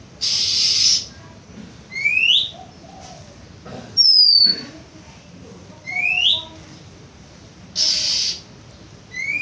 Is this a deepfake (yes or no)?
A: no